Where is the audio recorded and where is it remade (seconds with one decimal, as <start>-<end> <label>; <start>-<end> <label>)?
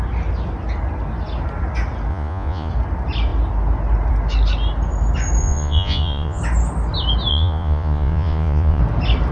0.0-2.1 recorded; 2.1-2.7 remade; 2.7-5.4 recorded; 5.4-6.4 remade; 6.4-7.3 recorded; 7.3-8.8 remade; 8.8-9.3 recorded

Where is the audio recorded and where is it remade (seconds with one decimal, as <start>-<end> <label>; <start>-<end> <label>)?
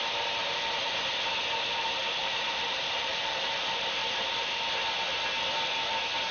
0.0-0.4 recorded; 0.4-0.9 remade; 0.9-2.2 recorded; 2.2-3.6 remade; 3.6-4.0 recorded; 4.0-4.7 remade; 4.7-6.3 recorded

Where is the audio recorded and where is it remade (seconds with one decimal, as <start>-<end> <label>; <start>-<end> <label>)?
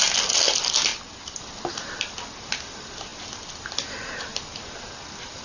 0.0-5.4 recorded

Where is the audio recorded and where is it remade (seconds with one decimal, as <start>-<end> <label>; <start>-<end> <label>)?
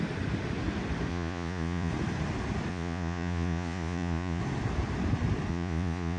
0.0-1.1 recorded; 1.1-1.9 remade; 1.9-2.7 recorded; 2.7-4.4 remade; 4.4-5.5 recorded; 5.5-6.2 remade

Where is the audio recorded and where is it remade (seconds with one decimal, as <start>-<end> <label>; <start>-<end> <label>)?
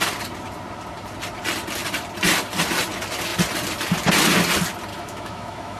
0.0-4.9 recorded; 4.9-5.8 remade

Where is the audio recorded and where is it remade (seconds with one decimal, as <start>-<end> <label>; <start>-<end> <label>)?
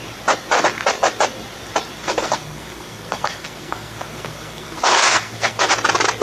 0.0-2.0 recorded; 2.0-5.7 remade; 5.7-6.2 recorded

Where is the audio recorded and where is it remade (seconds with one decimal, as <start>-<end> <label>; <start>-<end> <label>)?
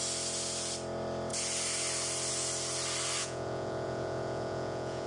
0.0-3.2 recorded; 3.2-5.1 remade